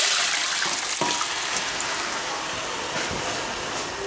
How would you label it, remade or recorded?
recorded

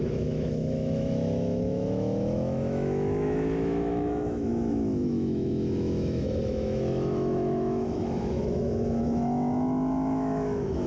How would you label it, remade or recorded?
remade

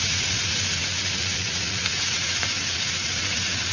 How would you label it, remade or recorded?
remade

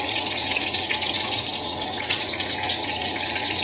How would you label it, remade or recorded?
remade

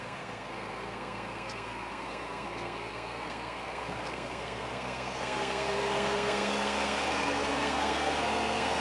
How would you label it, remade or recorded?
remade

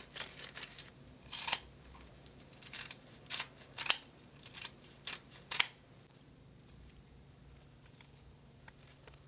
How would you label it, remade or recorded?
remade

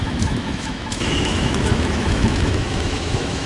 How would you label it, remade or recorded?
remade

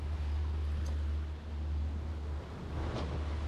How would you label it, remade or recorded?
recorded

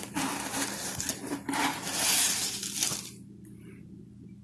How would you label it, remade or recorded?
recorded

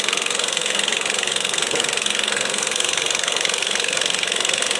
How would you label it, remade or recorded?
remade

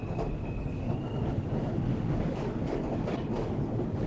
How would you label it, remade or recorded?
remade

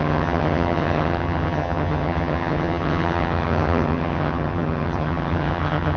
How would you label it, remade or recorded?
remade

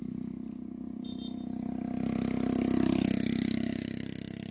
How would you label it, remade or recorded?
recorded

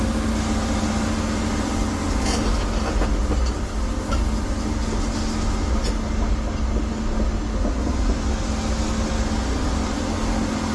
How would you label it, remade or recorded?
recorded